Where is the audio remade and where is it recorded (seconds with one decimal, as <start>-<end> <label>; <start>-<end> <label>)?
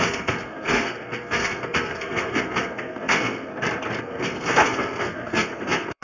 0.0-3.5 remade; 3.5-4.0 recorded; 4.0-6.0 remade